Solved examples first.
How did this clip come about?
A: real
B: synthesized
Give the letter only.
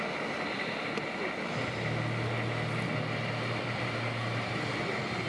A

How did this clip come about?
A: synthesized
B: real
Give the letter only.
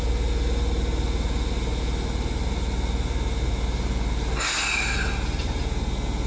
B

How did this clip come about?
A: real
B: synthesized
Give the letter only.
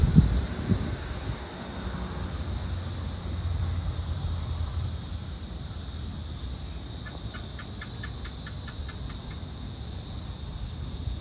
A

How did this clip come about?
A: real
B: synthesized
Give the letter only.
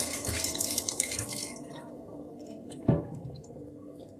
B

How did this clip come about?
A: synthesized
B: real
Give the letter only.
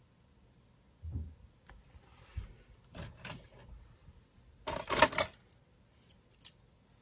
B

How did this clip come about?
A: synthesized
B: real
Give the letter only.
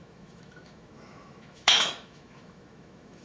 A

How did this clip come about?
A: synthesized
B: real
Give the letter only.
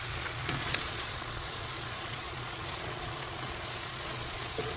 A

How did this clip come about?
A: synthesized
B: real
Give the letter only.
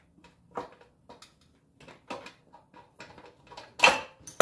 B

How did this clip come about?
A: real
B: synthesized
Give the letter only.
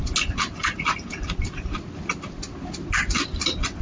A